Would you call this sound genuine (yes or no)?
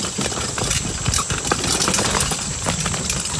yes